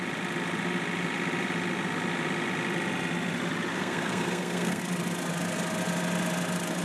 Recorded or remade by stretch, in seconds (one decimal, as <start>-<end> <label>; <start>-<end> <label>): 0.0-3.7 recorded; 3.7-4.8 remade; 4.8-6.8 recorded